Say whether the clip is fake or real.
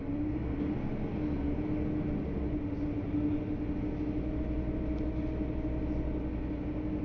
real